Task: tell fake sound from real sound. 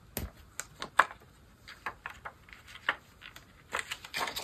real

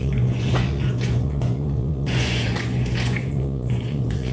fake